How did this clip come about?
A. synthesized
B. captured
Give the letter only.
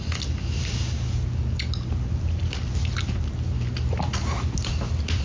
B